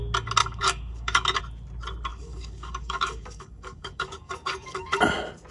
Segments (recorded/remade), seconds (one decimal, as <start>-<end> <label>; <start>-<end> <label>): 0.0-0.4 recorded; 0.4-1.4 remade; 1.4-2.1 recorded; 2.1-5.0 remade; 5.0-5.5 recorded